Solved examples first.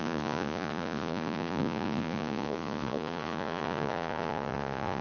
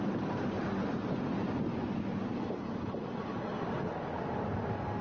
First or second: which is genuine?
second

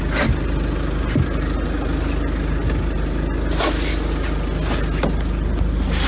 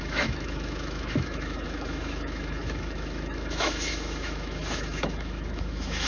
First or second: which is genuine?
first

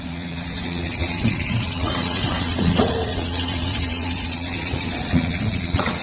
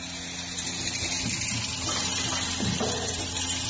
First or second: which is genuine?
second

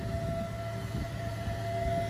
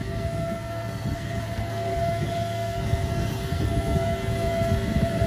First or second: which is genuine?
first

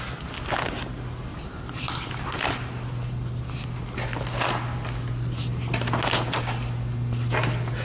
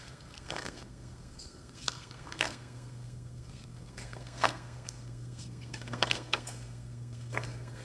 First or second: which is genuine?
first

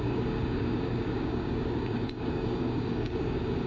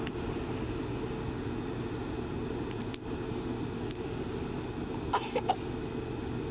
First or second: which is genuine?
second